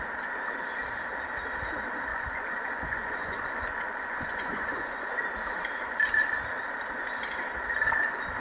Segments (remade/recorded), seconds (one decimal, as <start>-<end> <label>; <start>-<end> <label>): 0.0-2.1 recorded; 2.1-5.2 remade; 5.2-8.4 recorded